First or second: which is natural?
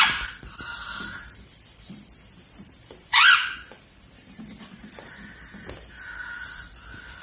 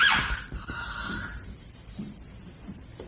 second